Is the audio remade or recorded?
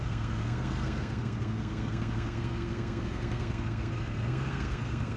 remade